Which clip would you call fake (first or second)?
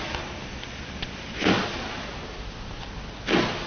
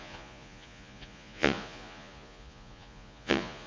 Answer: second